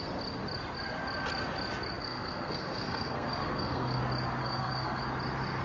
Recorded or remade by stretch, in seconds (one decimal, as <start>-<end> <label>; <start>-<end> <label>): 0.0-2.0 recorded; 2.0-4.0 remade; 4.0-4.4 recorded; 4.4-5.0 remade; 5.0-5.6 recorded